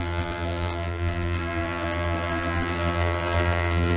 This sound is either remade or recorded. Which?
remade